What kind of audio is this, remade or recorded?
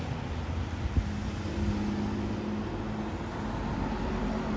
recorded